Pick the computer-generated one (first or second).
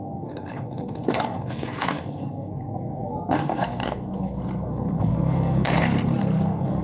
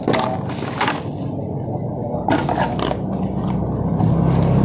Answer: first